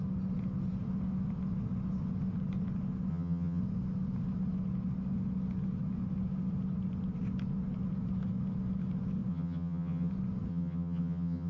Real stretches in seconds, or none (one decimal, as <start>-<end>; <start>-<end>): 0.0-3.1; 3.6-9.3; 10.1-10.5